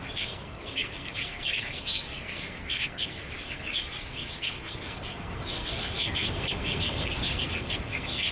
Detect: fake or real fake